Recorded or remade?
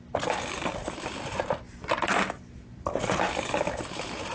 recorded